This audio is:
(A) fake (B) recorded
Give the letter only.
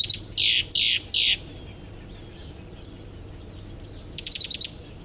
B